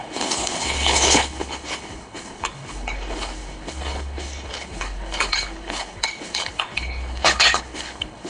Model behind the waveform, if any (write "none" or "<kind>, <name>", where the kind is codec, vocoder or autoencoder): codec, HILCodec